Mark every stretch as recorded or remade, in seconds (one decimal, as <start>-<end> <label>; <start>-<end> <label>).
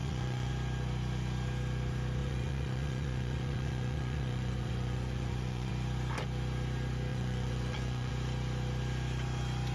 0.0-0.5 remade; 0.5-2.2 recorded; 2.2-5.7 remade; 5.7-7.1 recorded; 7.1-8.1 remade; 8.1-9.7 recorded